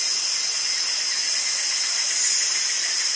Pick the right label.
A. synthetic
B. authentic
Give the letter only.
B